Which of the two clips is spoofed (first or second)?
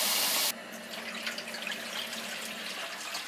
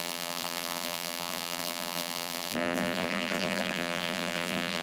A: second